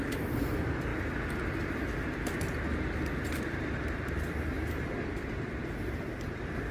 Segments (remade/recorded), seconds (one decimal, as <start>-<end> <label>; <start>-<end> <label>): 0.0-0.9 remade; 0.9-3.4 recorded; 3.4-6.7 remade